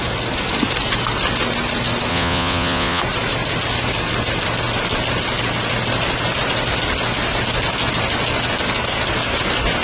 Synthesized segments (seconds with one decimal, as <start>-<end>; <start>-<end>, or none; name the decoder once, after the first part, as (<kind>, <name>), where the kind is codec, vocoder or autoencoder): 2.1-3.0 (vocoder, Vocos)